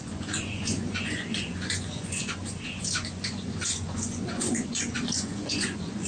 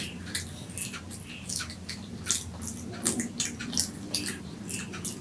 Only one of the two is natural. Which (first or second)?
second